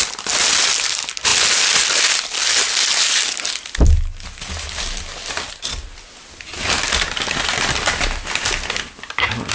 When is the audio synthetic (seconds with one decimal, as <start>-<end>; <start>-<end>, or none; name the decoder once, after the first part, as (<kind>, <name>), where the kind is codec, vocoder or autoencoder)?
none